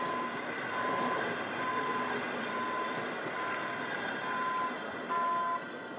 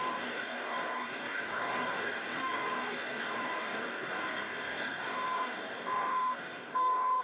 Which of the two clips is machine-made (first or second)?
second